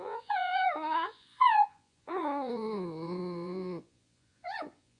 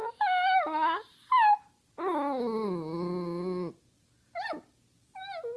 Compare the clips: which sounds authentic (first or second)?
second